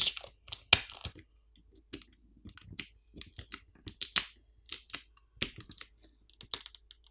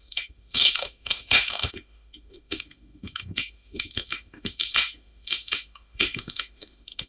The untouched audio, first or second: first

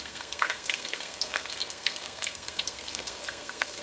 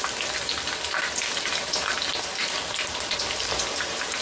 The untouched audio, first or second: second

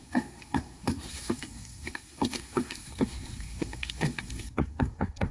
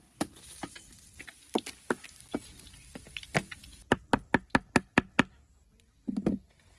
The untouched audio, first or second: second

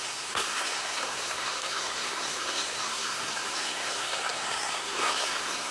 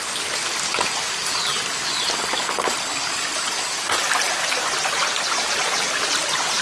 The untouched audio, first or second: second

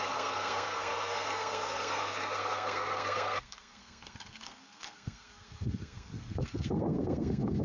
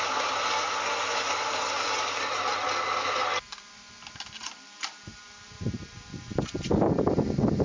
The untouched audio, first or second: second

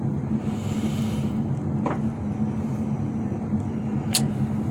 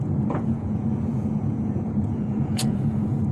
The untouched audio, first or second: first